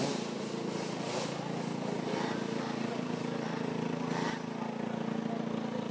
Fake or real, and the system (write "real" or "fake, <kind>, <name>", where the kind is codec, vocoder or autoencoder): real